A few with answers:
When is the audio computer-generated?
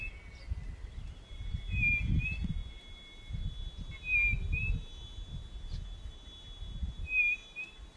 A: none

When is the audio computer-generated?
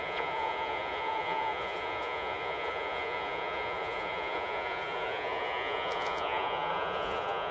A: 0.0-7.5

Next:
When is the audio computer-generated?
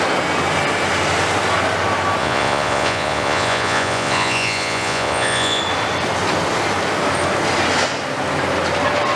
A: 2.2-5.6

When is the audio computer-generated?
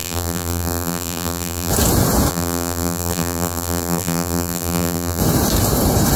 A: 0.0-1.7; 2.3-5.2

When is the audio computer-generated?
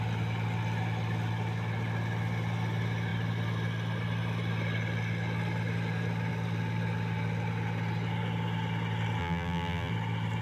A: 9.2-9.9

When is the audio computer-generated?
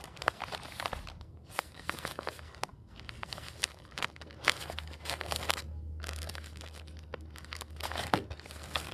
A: 0.0-0.4; 1.2-8.9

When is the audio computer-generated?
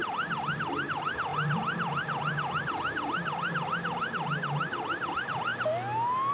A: none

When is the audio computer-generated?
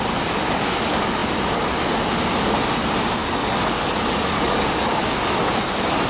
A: 3.2-5.3